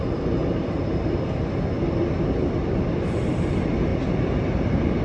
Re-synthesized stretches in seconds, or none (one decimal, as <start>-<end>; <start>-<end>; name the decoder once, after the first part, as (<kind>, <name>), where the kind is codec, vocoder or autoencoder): 0.4-1.2 (vocoder, BigVGAN v2); 3.9-5.0